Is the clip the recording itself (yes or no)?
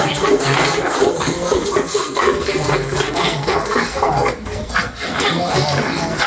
no